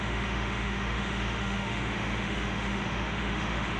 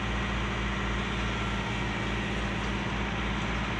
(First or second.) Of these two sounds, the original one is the second